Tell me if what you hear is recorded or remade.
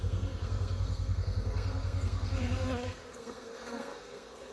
remade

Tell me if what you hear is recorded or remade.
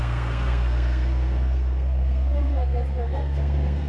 remade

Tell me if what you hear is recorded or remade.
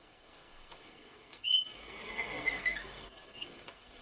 remade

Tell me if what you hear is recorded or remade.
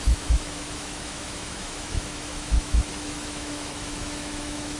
remade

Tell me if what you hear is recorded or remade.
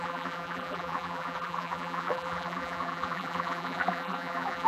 remade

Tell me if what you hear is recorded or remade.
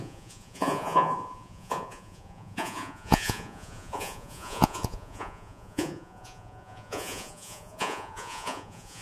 remade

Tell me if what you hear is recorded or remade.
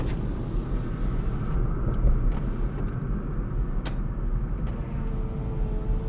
recorded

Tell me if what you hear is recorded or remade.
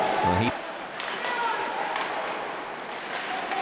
recorded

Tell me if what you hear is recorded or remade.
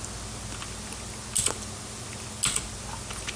recorded